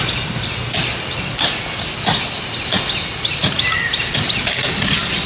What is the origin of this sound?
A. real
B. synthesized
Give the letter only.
A